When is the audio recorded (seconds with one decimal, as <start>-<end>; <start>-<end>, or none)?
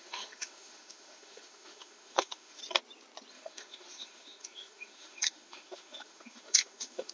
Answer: 2.6-3.3